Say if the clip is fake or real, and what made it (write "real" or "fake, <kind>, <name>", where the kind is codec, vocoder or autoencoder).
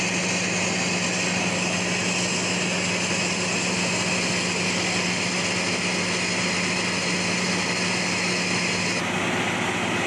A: real